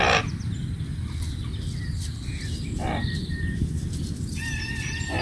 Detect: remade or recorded recorded